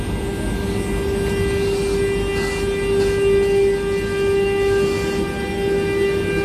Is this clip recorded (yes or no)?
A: yes